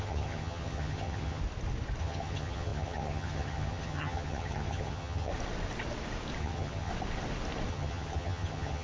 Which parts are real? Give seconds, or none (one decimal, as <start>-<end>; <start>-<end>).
1.4-2.0; 5.3-6.4; 6.9-7.7